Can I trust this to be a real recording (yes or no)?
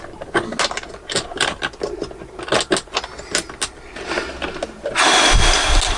yes